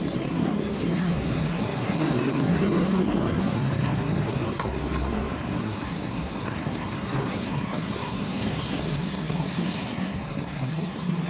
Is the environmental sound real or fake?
fake